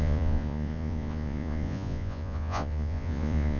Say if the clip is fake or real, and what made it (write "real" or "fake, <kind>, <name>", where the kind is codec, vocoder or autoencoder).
fake, vocoder, Vocos